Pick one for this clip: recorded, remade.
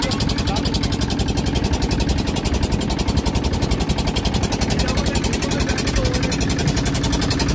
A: recorded